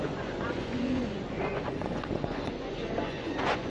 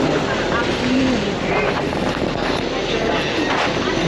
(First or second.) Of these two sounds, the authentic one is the second